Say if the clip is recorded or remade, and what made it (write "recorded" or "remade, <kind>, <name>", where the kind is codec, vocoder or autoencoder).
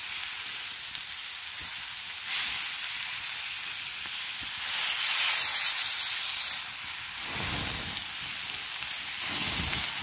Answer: recorded